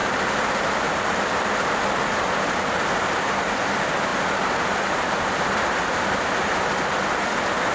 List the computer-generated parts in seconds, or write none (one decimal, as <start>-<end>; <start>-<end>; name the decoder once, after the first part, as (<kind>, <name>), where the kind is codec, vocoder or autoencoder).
none

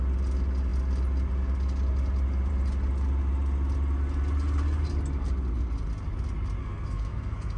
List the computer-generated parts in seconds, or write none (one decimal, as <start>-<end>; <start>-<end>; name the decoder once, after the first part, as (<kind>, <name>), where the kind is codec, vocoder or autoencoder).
6.6-7.6 (codec, SNAC)

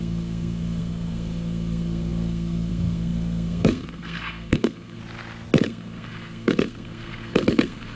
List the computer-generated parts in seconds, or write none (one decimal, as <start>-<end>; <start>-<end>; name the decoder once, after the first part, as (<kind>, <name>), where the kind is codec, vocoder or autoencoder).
0.0-5.0 (codec, SNAC); 5.6-8.0

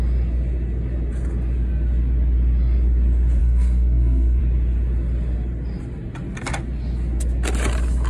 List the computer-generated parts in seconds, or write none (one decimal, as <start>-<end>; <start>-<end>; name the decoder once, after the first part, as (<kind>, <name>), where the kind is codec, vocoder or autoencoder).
3.4-4.4 (codec, SNAC)

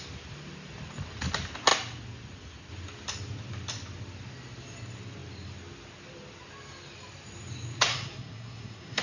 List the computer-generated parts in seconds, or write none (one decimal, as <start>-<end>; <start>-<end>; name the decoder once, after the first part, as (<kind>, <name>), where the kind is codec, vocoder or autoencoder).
7.9-9.0 (codec, SNAC)